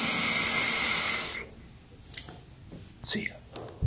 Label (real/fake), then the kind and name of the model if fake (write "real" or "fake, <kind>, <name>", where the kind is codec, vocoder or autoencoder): real